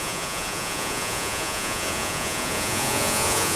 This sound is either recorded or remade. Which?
remade